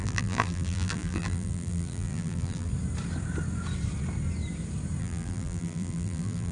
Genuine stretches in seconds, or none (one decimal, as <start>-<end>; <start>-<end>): 2.7-5.0